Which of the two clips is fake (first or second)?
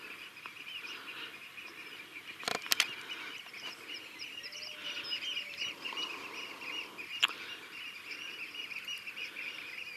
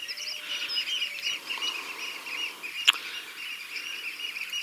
first